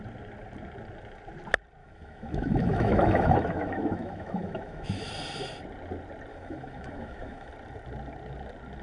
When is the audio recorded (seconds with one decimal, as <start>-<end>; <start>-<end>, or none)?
0.0-1.8; 5.1-6.3; 7.5-8.8